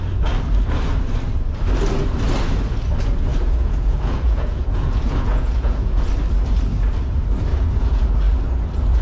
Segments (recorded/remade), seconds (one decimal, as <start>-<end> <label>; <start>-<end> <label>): 0.0-3.3 recorded; 3.3-6.1 remade; 6.1-7.5 recorded; 7.5-8.1 remade; 8.1-9.0 recorded